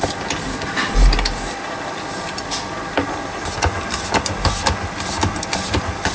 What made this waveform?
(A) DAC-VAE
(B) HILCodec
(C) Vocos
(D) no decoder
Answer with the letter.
D